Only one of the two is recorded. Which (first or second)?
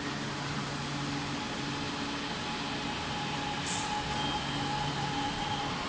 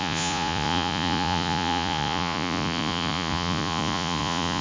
first